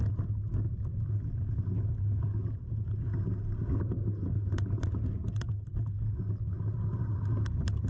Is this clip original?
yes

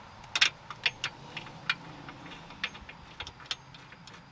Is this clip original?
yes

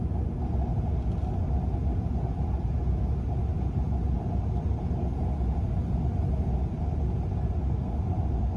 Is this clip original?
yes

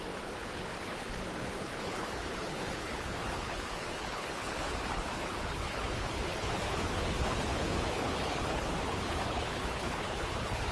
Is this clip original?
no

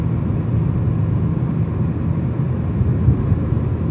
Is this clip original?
yes